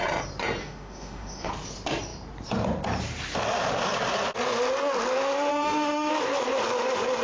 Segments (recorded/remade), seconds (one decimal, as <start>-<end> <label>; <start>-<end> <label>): 0.0-0.6 recorded; 0.6-1.5 remade; 1.5-5.5 recorded; 5.5-6.1 remade; 6.1-7.2 recorded

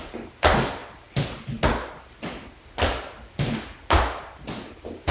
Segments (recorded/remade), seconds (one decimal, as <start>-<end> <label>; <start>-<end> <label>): 0.0-5.1 recorded

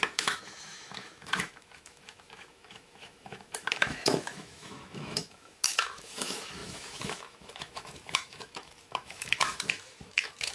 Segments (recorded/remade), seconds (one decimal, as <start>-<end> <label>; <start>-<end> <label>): 0.0-10.5 remade

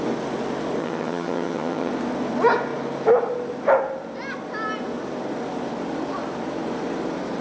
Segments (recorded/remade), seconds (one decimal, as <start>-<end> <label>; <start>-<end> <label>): 0.0-0.8 recorded; 0.8-1.9 remade; 1.9-7.4 recorded

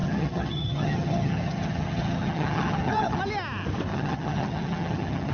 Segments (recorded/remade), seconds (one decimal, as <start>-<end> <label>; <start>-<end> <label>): 0.0-3.2 remade; 3.2-3.9 recorded; 3.9-5.3 remade

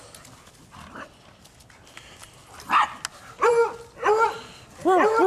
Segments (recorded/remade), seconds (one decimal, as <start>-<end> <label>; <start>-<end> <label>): 0.0-5.3 recorded

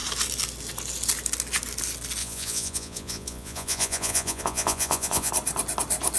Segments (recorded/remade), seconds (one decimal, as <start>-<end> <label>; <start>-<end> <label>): 0.0-2.2 recorded; 2.2-5.3 remade; 5.3-6.2 recorded